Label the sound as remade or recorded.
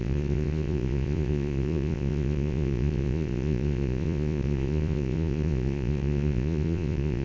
remade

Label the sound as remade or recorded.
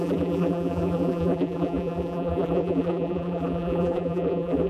remade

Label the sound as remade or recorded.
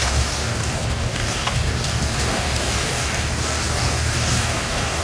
remade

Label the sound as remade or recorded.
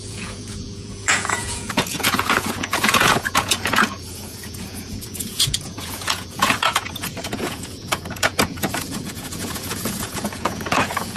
remade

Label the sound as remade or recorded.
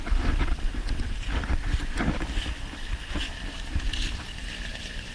remade